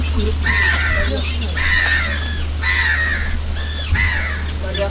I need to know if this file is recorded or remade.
recorded